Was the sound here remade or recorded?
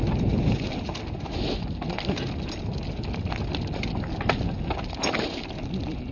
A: recorded